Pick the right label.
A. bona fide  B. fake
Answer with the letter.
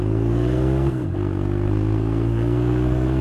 B